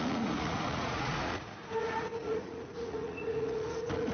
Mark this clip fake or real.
fake